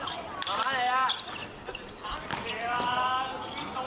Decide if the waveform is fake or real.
real